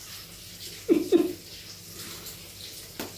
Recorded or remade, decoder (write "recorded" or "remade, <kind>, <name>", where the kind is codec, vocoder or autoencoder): recorded